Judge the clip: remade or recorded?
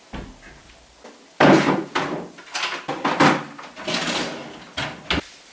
recorded